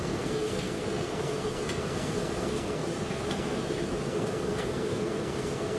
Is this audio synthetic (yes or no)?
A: yes